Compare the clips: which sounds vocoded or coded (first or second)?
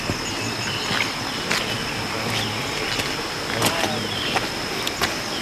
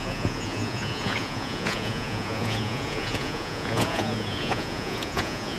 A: second